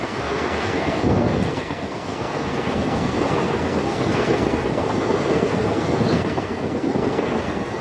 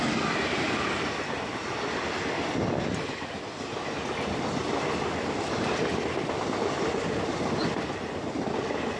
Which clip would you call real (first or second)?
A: second